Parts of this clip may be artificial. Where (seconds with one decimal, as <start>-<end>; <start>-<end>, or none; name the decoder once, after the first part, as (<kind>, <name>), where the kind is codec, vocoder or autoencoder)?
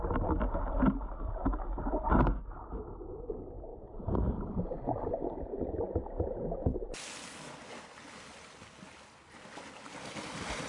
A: none